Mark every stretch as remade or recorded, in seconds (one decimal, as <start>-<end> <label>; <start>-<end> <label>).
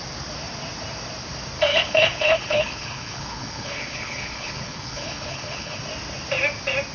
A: 0.0-1.7 recorded; 1.7-5.8 remade; 5.8-6.9 recorded